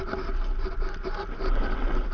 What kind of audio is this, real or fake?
real